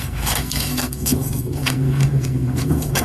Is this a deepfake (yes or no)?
yes